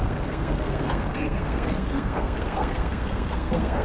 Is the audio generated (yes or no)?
yes